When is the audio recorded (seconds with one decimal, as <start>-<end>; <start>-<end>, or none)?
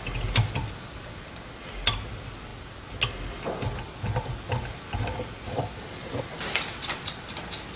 0.0-7.8